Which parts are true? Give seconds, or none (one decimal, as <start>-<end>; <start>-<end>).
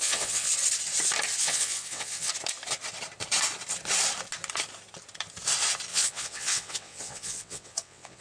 0.5-1.4; 2.3-5.9